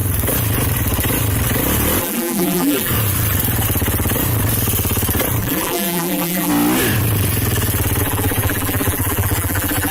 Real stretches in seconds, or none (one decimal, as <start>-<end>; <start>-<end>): 0.0-2.0; 2.9-5.4; 6.5-8.0